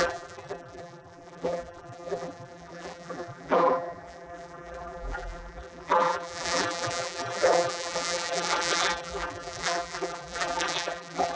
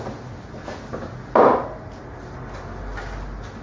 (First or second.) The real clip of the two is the second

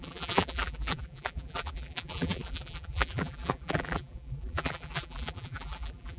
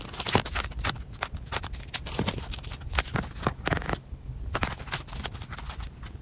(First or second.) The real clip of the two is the second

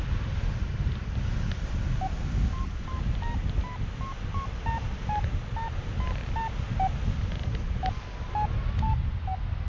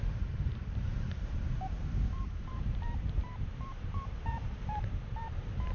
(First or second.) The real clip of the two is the first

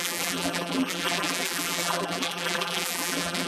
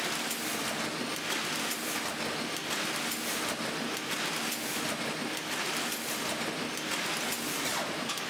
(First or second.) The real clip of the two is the second